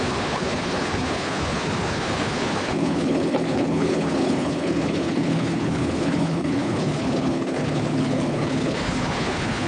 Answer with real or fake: fake